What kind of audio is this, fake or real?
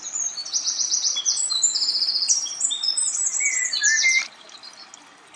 real